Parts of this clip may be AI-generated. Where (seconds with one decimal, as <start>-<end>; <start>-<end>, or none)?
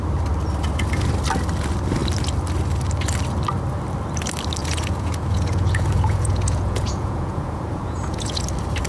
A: 4.6-8.4